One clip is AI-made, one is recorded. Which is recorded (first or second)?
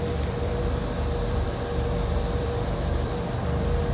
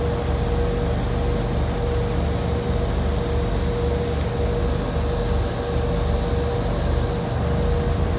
second